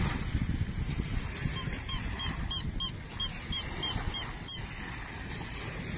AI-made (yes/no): no